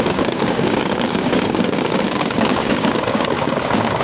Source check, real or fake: fake